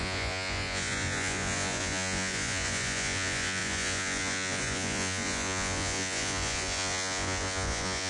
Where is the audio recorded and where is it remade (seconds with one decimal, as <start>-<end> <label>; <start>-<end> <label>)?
0.0-8.1 remade